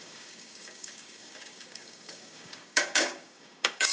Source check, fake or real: fake